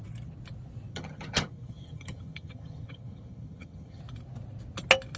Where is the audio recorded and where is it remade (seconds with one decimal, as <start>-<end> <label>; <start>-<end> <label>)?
0.0-0.9 recorded; 0.9-4.0 remade; 4.0-5.2 recorded